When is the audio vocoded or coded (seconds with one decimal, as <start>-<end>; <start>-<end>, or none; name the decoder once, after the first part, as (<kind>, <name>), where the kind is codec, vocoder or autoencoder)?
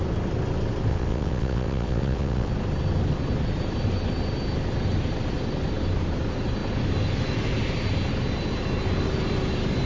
0.9-2.5 (vocoder, WaveNeXt)